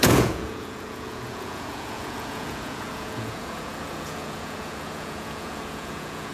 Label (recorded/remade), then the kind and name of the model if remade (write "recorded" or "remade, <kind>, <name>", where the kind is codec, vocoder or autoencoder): remade, vocoder, Vocos